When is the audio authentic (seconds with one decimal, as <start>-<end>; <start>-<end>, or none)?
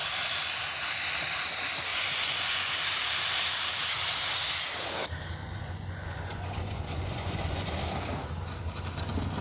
0.0-1.9; 2.7-5.4; 7.7-9.4